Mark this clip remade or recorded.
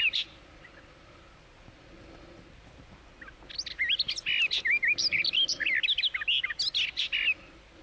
recorded